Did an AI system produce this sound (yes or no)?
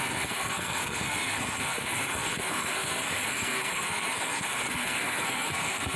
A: yes